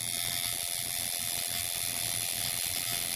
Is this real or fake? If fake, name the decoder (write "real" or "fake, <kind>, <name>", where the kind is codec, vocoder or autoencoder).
real